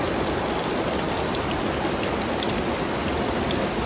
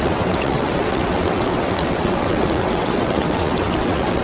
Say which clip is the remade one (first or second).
second